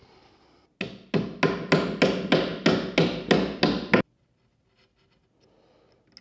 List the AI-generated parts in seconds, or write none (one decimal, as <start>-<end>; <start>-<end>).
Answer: none